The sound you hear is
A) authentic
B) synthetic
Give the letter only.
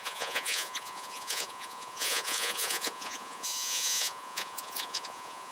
B